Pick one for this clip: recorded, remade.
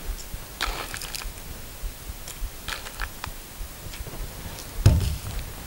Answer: recorded